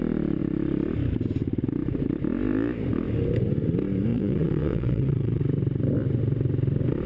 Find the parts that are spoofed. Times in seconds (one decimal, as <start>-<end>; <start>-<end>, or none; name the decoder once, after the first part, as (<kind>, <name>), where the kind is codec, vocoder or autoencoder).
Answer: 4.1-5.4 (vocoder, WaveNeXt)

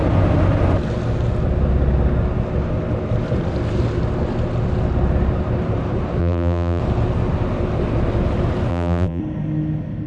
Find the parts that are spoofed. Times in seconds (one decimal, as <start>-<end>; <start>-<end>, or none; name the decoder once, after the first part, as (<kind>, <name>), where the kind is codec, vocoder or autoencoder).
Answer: 6.2-6.8 (vocoder, BigVGAN v2); 8.7-9.2

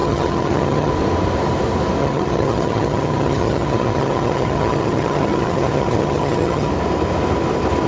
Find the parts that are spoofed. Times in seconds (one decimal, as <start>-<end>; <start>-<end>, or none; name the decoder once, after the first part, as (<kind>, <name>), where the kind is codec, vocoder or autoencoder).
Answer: 0.0-0.9 (vocoder, HiFi-GAN); 2.0-6.7

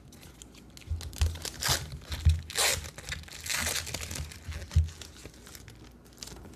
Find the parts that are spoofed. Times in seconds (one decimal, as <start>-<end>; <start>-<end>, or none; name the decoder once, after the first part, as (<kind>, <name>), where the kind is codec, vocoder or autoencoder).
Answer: none

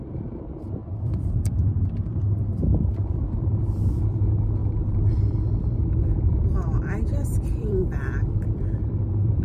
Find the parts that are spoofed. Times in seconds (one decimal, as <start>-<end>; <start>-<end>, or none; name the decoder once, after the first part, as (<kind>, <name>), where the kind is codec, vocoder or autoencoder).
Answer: 0.8-4.0 (vocoder, BigVGAN v2); 4.6-9.4